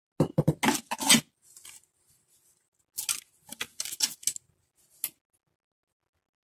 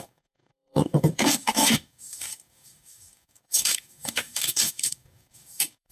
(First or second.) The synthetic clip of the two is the second